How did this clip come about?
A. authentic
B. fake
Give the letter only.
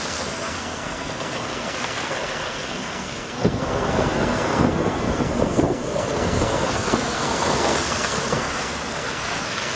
B